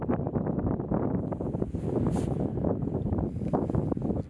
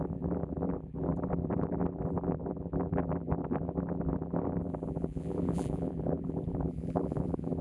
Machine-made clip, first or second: second